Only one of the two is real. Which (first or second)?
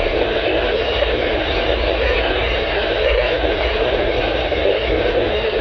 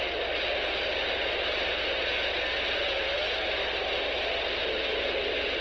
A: second